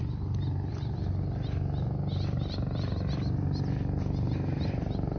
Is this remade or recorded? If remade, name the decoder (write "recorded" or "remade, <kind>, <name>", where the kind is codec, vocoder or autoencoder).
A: recorded